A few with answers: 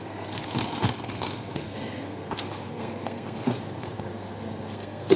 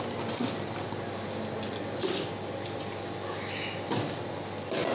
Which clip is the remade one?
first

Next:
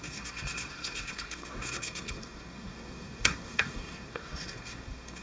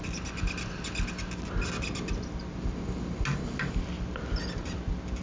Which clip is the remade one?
first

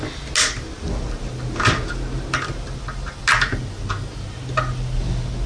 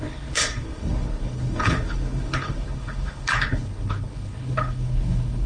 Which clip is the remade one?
second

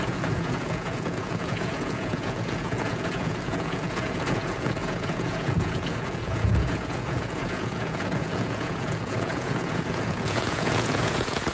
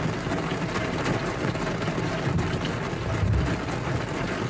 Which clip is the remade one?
first